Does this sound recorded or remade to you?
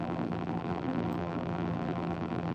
remade